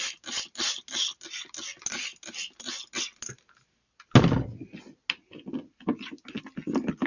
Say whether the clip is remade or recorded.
recorded